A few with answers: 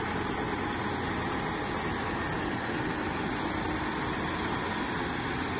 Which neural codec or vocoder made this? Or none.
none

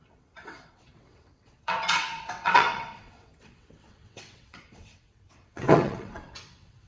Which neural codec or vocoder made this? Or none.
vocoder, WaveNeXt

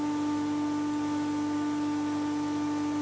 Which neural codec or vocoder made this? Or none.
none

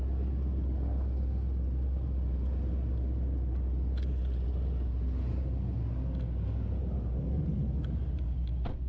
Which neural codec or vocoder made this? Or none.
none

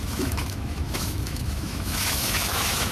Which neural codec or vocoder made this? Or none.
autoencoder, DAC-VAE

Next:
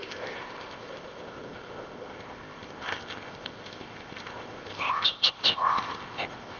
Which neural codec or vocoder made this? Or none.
codec, ZipCodec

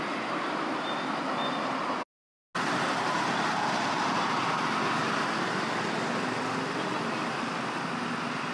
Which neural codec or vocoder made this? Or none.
none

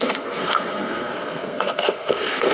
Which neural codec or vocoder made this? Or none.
codec, SNAC